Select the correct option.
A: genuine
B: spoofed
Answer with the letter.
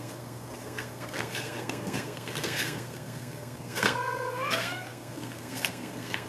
B